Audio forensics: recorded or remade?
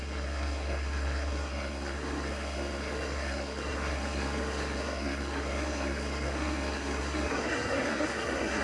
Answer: remade